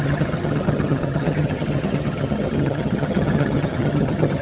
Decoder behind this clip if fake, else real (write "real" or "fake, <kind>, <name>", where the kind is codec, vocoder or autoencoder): fake, vocoder, HiFi-GAN